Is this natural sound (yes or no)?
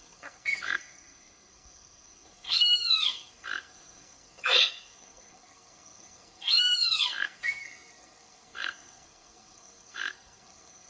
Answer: no